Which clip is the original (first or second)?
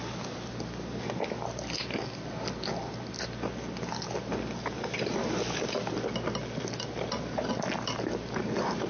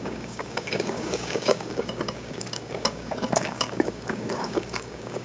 first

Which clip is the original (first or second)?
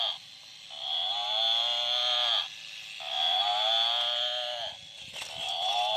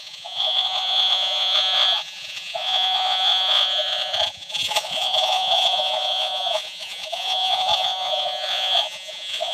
first